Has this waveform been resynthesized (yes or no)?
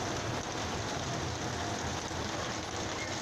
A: no